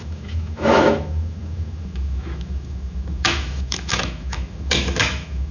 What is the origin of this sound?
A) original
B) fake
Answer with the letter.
B